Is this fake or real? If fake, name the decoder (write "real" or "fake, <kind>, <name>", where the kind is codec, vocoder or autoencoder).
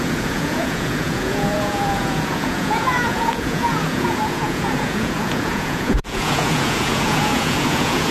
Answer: fake, vocoder, Vocos